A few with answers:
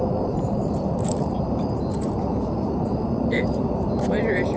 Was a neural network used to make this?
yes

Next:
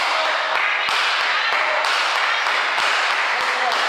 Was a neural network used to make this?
no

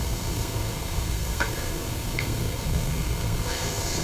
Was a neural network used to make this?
yes